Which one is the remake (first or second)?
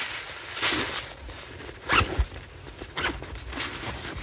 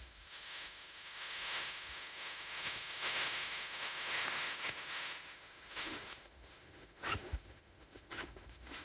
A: second